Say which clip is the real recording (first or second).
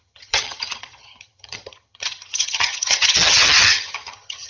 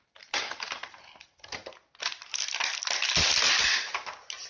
second